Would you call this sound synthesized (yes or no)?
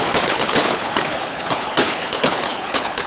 yes